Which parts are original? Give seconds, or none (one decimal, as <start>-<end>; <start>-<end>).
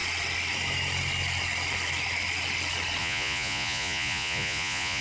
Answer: 0.0-3.0